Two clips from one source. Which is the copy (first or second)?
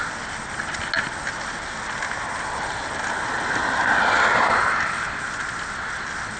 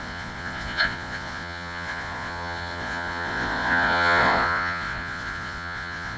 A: second